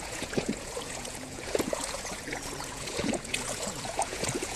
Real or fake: fake